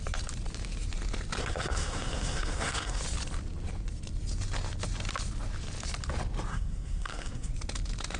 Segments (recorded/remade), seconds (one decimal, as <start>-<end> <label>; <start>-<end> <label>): 0.0-1.4 recorded; 1.4-3.0 remade; 3.0-6.5 recorded; 6.5-7.5 remade; 7.5-8.2 recorded